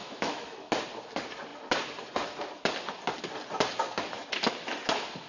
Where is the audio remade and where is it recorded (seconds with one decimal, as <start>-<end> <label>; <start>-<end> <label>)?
0.0-0.7 remade; 0.7-5.3 recorded